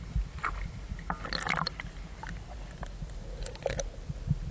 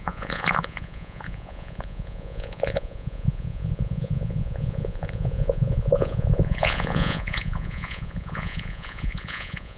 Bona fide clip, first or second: first